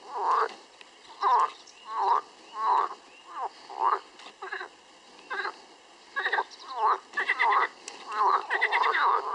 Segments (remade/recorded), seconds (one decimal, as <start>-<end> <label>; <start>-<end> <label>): 0.0-9.3 recorded